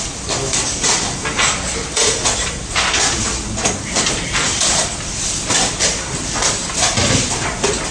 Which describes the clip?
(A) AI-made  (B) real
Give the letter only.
A